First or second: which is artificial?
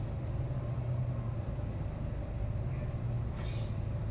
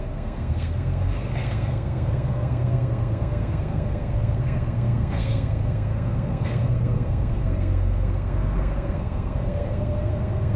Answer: second